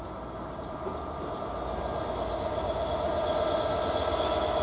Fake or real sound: real